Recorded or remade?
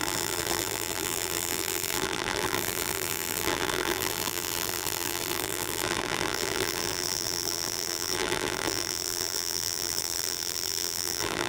remade